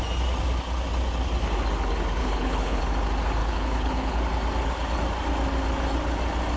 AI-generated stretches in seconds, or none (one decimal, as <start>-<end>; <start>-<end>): 2.2-2.8; 3.4-4.2